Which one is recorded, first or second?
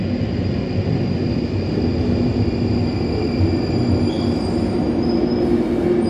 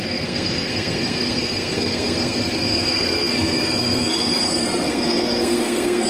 first